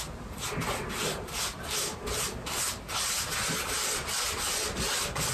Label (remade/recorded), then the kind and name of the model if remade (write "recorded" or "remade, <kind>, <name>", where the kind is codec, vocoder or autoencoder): recorded